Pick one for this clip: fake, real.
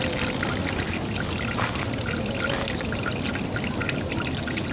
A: real